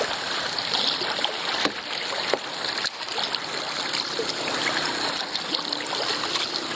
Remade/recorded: recorded